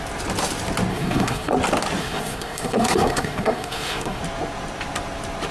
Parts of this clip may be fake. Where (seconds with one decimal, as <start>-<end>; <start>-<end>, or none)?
0.9-1.5; 2.0-4.2